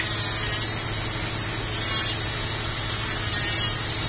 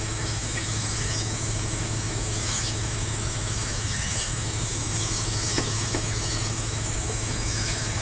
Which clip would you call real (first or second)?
first